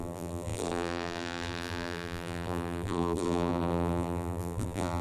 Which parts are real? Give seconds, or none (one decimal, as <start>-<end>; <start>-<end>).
none